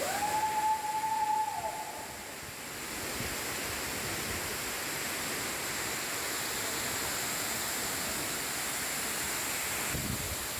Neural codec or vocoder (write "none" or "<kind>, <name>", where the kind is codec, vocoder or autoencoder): none